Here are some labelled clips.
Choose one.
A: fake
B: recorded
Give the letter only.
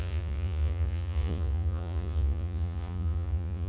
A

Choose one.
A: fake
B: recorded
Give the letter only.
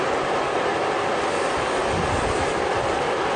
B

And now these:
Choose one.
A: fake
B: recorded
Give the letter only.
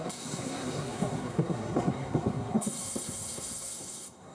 A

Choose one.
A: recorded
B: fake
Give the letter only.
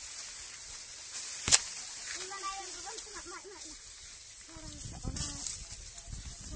A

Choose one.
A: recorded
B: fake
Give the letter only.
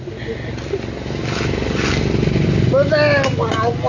A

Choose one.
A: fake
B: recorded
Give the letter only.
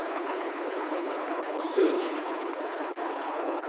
A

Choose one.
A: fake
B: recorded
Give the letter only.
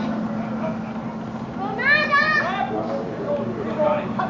B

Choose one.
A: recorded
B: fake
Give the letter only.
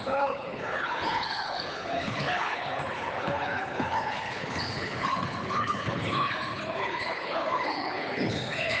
B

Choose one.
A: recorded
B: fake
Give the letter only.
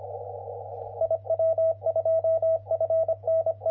A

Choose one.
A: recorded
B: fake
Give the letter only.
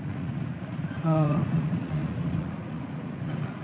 B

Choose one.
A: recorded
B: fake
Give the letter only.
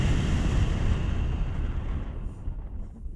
A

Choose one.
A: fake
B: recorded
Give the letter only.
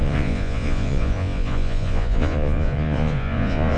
A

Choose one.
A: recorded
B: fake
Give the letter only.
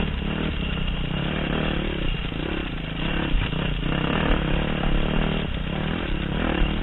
A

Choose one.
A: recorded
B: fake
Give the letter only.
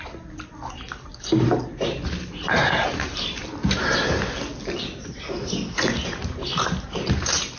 A